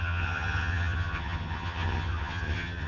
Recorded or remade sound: remade